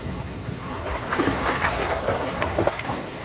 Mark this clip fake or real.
fake